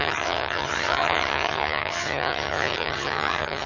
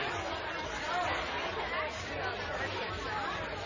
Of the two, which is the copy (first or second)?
first